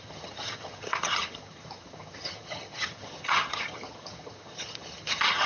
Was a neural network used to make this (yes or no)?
yes